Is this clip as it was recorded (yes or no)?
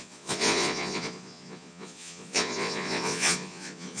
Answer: no